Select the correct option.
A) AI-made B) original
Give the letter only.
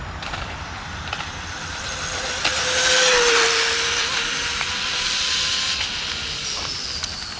B